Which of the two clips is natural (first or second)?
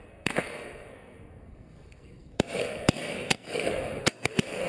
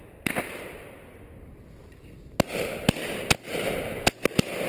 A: second